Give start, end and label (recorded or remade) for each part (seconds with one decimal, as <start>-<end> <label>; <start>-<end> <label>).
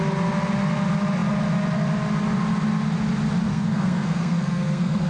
0.0-3.5 recorded; 3.5-5.1 remade